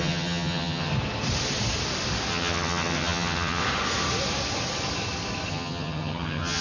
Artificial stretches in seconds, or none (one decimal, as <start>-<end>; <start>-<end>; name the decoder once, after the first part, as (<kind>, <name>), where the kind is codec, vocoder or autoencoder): 0.0-0.9 (vocoder, HiFi-GAN); 2.3-3.6; 5.5-6.6